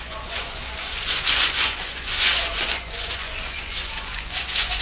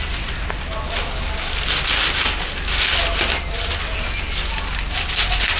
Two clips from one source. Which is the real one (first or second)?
second